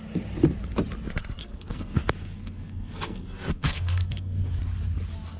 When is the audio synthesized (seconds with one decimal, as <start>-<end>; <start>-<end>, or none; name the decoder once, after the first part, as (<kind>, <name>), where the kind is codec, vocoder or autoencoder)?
1.4-4.6 (codec, SNAC)

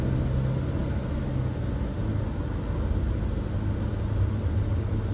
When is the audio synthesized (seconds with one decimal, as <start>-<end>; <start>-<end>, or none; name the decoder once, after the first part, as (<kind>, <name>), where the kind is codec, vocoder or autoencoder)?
none